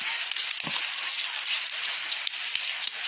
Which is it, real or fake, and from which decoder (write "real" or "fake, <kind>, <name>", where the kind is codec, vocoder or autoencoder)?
real